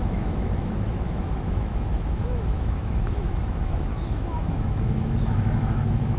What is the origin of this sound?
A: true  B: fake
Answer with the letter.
B